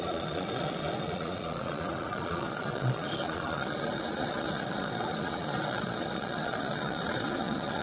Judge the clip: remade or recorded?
remade